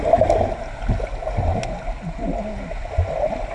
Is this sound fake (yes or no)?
no